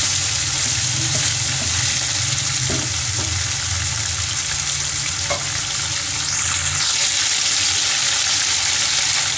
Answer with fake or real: real